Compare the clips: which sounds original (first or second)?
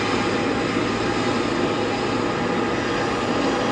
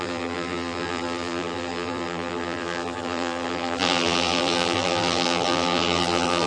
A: first